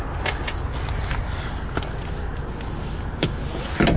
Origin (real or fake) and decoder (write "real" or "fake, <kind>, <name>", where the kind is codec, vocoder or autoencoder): real